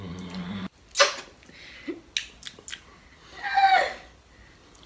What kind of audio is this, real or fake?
real